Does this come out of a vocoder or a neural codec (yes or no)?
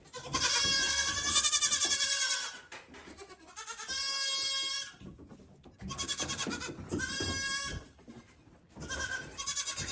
no